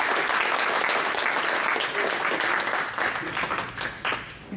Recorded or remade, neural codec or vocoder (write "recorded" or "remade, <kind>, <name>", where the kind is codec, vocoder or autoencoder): recorded